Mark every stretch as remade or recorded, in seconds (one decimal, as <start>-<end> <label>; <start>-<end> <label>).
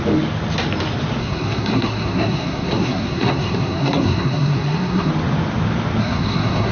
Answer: 0.0-1.2 recorded; 1.2-5.1 remade; 5.1-6.0 recorded; 6.0-6.7 remade